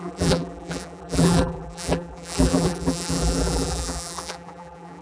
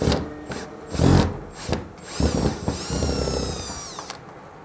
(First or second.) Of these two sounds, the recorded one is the second